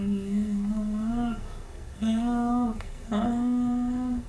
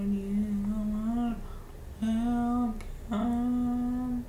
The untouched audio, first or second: second